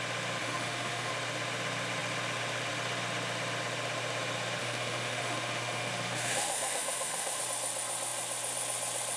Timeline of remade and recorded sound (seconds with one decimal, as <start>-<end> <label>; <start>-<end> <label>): 0.0-0.4 recorded; 0.4-1.1 remade; 1.1-4.6 recorded; 4.6-7.4 remade; 7.4-9.2 recorded